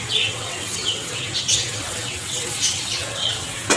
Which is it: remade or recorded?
remade